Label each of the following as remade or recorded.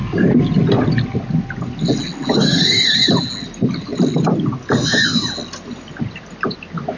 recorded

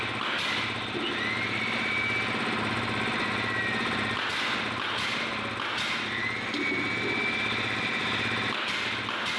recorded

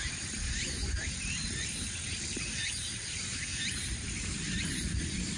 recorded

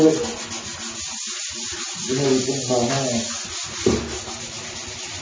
recorded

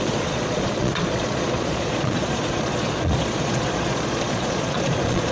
remade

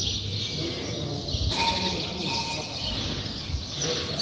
recorded